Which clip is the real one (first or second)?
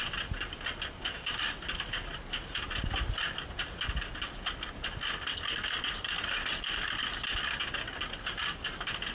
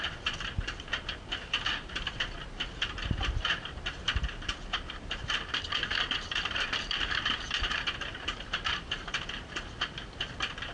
first